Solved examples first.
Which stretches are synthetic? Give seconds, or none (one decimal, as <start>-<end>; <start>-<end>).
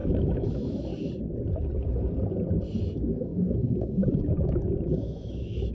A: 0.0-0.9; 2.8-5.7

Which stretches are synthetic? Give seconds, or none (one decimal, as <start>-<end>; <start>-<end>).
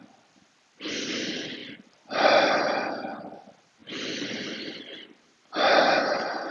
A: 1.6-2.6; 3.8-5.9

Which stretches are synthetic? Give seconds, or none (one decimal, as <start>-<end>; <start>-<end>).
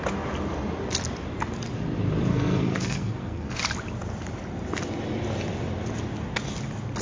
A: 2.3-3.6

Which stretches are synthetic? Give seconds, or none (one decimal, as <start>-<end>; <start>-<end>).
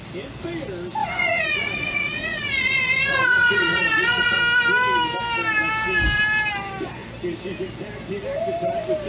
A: 1.0-4.4